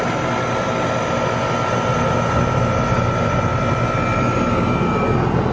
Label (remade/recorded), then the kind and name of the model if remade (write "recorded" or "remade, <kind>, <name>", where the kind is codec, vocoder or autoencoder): recorded